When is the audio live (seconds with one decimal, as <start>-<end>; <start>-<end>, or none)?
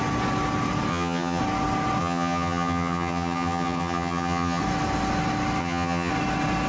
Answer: 0.0-0.9; 1.4-2.0; 4.6-5.6; 6.1-6.7